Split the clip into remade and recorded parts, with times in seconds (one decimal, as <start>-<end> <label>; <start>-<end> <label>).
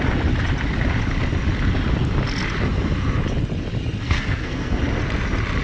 0.0-4.0 recorded; 4.0-4.8 remade; 4.8-5.6 recorded